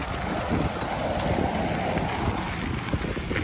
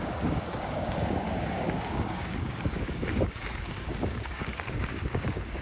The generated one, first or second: second